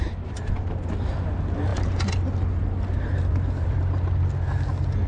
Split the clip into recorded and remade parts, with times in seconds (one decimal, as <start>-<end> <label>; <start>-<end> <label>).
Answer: 0.0-5.1 recorded

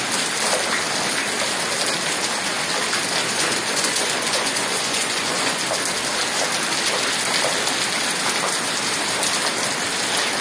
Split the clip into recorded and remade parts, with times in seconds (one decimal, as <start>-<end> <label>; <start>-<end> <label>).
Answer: 0.0-3.2 recorded; 3.2-5.6 remade; 5.6-10.4 recorded

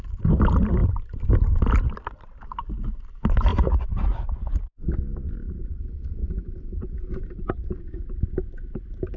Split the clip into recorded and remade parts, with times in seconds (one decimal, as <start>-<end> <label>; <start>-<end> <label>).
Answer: 0.0-3.5 recorded; 3.5-4.9 remade; 4.9-9.2 recorded

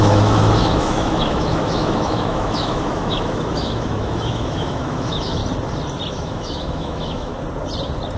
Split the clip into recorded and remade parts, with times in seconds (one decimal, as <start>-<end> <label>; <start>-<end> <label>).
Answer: 0.0-5.4 remade; 5.4-6.1 recorded; 6.1-7.3 remade; 7.3-8.2 recorded

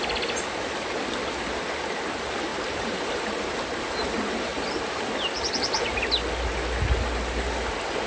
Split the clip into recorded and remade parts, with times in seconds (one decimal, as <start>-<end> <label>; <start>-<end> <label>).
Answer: 0.0-2.5 recorded; 2.5-5.0 remade; 5.0-8.1 recorded

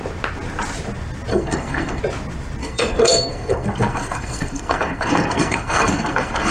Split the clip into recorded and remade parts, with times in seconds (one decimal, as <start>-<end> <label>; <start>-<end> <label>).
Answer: 0.0-1.3 recorded; 1.3-2.0 remade; 2.0-2.6 recorded; 2.6-6.5 remade